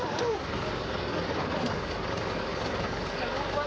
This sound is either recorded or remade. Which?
remade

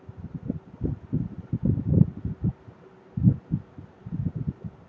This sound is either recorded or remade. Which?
recorded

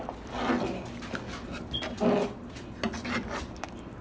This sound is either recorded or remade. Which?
recorded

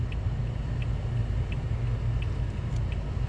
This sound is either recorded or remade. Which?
recorded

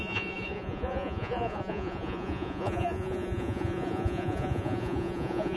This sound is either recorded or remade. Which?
remade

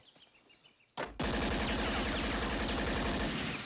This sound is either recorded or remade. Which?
recorded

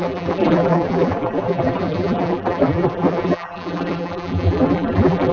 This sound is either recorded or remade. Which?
remade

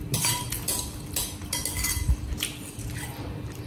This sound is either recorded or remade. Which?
recorded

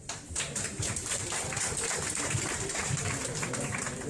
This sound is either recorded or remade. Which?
remade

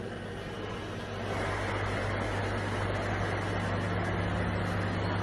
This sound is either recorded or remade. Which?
recorded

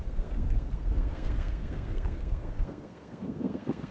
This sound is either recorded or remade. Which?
remade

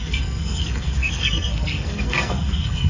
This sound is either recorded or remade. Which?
remade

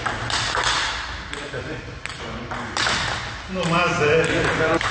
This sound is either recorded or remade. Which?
recorded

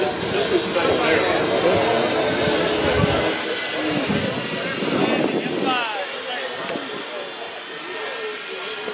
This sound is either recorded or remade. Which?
recorded